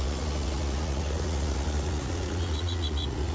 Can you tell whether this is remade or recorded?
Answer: remade